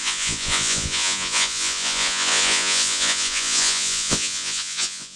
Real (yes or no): no